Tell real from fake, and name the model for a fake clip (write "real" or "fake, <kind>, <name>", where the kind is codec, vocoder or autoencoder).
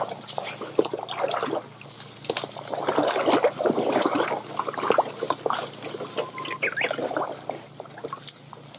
real